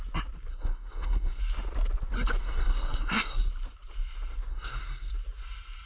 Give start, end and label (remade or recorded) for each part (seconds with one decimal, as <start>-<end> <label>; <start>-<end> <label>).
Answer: 0.0-0.5 recorded; 0.5-1.4 remade; 1.4-2.4 recorded; 2.4-3.5 remade; 3.5-4.5 recorded; 4.5-5.1 remade; 5.1-5.9 recorded